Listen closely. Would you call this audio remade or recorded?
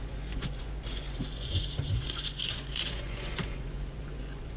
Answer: remade